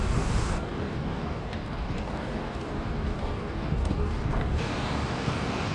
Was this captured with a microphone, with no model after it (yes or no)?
no